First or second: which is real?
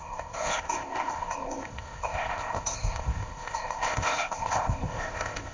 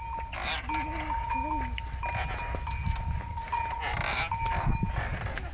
second